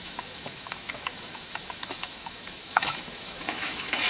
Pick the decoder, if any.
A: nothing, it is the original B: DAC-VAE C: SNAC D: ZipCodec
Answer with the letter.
B